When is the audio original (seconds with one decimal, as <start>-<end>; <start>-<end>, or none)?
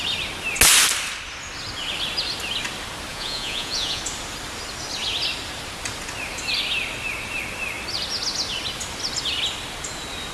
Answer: 0.0-3.1; 4.0-10.3